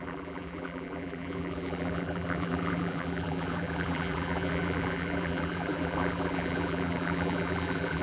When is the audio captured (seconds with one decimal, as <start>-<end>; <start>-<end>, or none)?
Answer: none